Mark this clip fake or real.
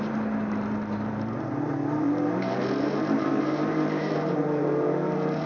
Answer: fake